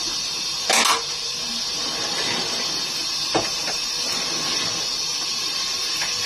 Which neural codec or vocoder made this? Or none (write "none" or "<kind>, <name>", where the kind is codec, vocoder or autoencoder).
none